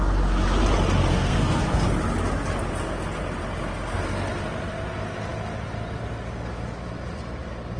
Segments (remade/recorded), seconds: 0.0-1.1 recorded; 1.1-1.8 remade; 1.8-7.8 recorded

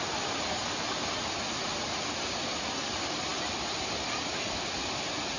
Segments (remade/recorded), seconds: 0.0-5.4 recorded

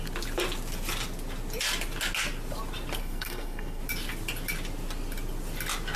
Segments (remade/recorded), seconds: 0.0-3.0 recorded; 3.0-3.8 remade; 3.8-6.0 recorded

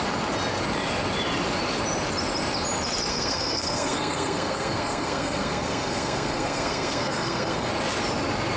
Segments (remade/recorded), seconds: 0.0-3.1 recorded; 3.1-7.7 remade; 7.7-8.6 recorded

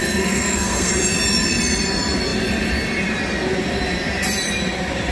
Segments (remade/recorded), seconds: 0.0-0.9 remade; 0.9-5.1 recorded

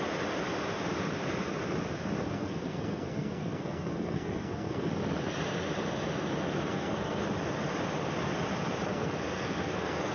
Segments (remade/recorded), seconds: 0.0-2.2 recorded; 2.2-4.9 remade; 4.9-6.7 recorded; 6.7-7.2 remade; 7.2-8.9 recorded; 8.9-10.1 remade

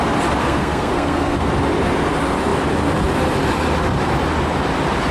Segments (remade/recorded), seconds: 0.0-0.4 recorded; 0.4-1.5 remade; 1.5-5.1 recorded

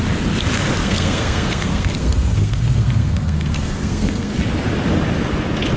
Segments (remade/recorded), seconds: 0.0-0.8 recorded; 0.8-4.3 remade; 4.3-5.8 recorded